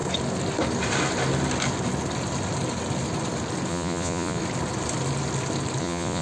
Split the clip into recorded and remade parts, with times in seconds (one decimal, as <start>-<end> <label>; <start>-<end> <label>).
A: 0.0-3.7 recorded; 3.7-4.4 remade; 4.4-5.8 recorded; 5.8-6.2 remade